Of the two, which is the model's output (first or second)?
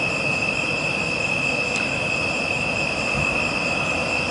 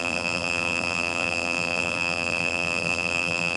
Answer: second